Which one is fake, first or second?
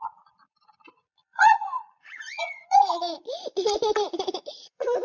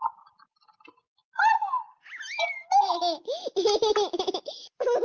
first